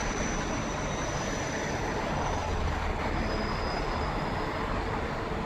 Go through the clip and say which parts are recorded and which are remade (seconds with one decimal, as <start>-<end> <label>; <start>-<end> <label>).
0.0-5.5 recorded